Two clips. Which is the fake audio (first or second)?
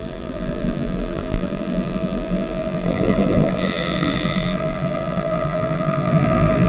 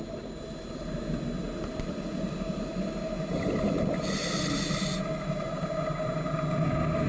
first